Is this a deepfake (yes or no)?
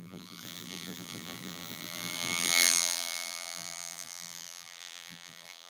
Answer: yes